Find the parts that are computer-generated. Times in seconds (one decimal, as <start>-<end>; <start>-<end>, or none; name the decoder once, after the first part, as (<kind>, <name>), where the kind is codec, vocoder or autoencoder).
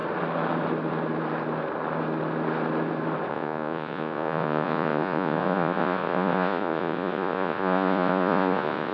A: 3.3-8.9 (vocoder, Vocos)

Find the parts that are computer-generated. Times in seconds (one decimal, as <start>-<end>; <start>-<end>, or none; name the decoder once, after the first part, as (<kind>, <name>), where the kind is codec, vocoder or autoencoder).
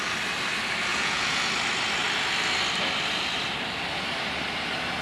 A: 0.9-1.5 (vocoder, Vocos)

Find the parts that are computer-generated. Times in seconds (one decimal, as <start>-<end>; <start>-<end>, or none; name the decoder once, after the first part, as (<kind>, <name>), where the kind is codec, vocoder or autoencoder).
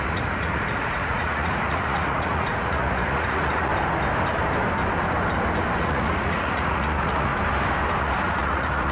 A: 0.0-3.7 (vocoder, Vocos); 5.8-7.3; 8.0-8.9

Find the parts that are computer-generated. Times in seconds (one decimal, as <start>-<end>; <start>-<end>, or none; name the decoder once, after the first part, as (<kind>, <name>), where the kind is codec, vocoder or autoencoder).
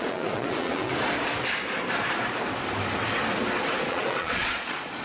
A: 0.0-0.9 (vocoder, Vocos); 3.9-5.0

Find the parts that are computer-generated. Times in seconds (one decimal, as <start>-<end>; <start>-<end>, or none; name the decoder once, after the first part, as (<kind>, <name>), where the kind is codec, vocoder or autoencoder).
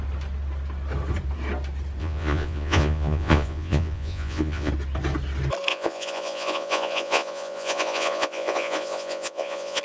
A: 2.0-4.7 (vocoder, Vocos); 5.7-9.8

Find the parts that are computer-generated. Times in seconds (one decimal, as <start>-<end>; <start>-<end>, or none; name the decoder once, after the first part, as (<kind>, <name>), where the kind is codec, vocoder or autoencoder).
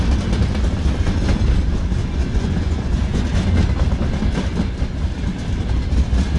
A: 2.0-3.2 (vocoder, Vocos)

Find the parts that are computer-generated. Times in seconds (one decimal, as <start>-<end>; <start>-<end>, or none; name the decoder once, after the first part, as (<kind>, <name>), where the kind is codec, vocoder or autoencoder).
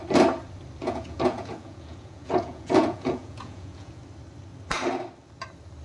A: 0.8-4.0 (vocoder, Vocos)